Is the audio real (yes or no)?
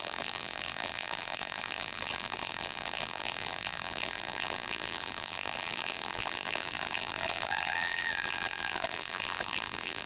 no